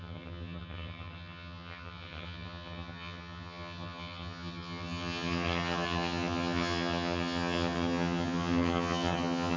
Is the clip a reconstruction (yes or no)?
yes